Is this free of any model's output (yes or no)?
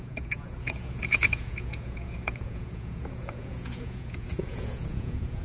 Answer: no